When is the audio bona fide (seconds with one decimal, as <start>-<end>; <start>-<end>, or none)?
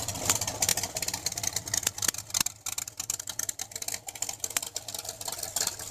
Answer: 0.0-5.9